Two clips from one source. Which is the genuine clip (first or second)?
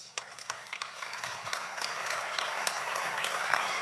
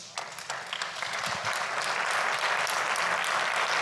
second